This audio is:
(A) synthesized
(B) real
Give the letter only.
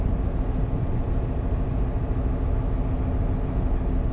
B